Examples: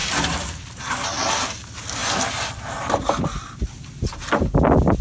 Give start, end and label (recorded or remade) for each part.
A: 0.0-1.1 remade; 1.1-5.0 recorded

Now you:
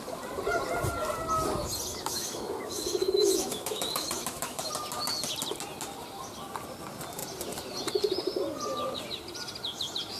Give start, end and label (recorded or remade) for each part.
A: 0.0-1.9 recorded; 1.9-4.7 remade; 4.7-10.2 recorded

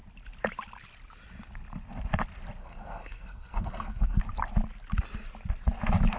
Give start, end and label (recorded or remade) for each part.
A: 0.0-2.6 recorded; 2.6-4.2 remade; 4.2-6.2 recorded

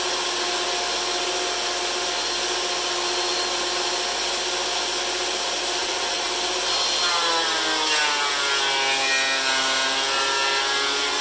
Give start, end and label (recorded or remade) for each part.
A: 0.0-5.8 recorded; 5.8-6.3 remade; 6.3-11.2 recorded

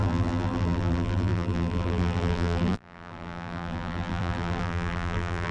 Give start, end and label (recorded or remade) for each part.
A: 0.0-5.5 remade

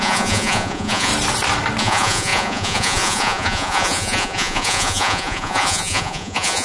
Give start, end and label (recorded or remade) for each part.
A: 0.0-1.1 remade; 1.1-1.8 recorded; 1.8-6.6 remade

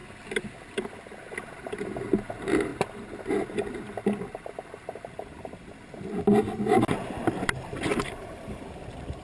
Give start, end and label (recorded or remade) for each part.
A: 0.0-7.9 recorded; 7.9-8.6 remade; 8.6-9.2 recorded